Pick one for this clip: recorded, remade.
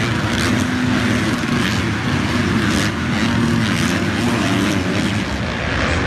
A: recorded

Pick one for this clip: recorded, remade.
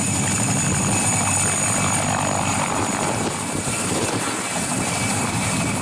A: recorded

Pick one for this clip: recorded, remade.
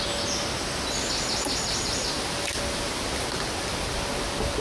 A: recorded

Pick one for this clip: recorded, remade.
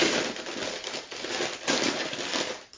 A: recorded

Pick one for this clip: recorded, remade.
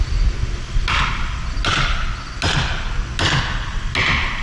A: recorded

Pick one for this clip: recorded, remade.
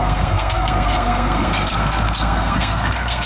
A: remade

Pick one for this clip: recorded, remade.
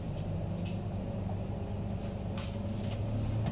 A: recorded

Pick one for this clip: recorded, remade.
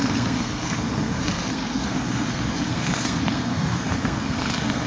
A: remade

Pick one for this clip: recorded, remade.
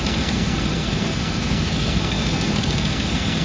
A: remade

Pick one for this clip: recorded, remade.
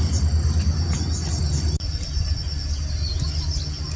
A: recorded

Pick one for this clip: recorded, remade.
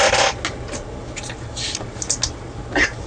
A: recorded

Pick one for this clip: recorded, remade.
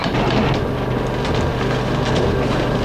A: recorded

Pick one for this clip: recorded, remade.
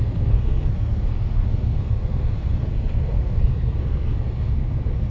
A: remade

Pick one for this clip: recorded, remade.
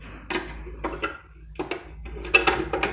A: recorded